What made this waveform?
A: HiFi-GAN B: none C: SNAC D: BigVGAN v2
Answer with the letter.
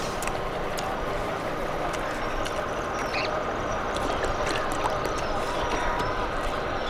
D